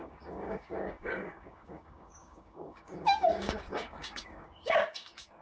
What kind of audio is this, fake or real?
fake